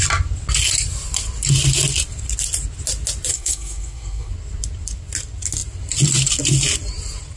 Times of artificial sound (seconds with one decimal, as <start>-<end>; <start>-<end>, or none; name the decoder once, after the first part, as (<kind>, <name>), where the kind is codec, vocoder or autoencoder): 3.3-4.3 (codec, SNAC)